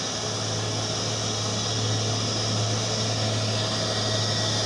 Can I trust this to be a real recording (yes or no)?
yes